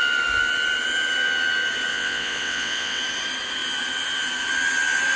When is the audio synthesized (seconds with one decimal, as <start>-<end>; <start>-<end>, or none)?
1.9-3.0